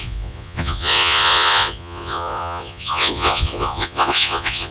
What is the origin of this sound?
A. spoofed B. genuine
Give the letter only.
A